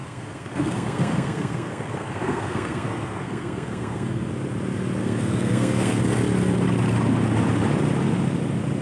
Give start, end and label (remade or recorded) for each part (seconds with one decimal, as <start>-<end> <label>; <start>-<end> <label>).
0.0-4.3 remade; 4.3-5.0 recorded; 5.0-6.0 remade; 6.0-8.8 recorded